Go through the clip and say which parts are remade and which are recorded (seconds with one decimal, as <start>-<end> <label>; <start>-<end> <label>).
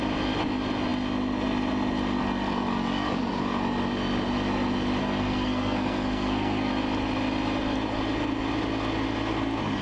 0.0-5.0 recorded; 5.0-6.7 remade; 6.7-9.8 recorded